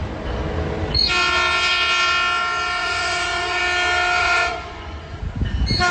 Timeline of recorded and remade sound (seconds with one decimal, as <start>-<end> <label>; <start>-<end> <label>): 0.0-2.8 recorded; 2.8-3.6 remade; 3.6-4.2 recorded; 4.2-5.2 remade; 5.2-5.9 recorded